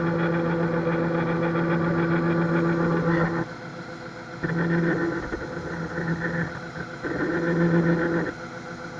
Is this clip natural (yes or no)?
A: yes